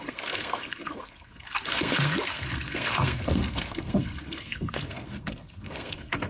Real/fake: fake